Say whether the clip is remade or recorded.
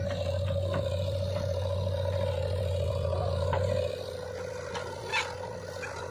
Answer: recorded